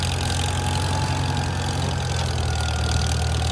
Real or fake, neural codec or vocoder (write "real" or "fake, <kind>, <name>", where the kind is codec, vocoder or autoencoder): real